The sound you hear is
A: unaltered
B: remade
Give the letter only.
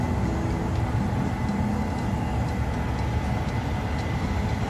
A